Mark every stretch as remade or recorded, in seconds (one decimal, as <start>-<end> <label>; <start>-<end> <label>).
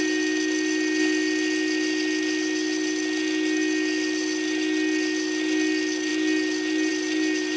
0.0-7.6 recorded